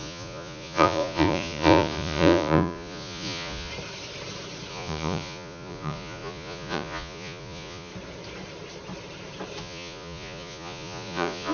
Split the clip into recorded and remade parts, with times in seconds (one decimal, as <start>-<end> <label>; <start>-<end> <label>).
0.0-3.7 remade; 3.7-4.7 recorded; 4.7-7.9 remade; 7.9-9.6 recorded; 9.6-11.5 remade